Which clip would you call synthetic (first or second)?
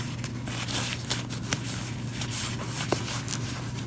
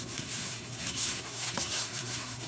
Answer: second